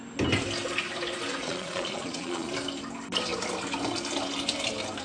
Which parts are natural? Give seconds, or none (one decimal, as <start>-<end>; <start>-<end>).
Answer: 0.0-1.3; 2.5-5.0